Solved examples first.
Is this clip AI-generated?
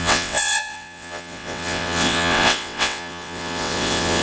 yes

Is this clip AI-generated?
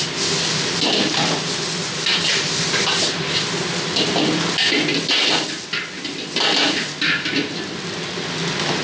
no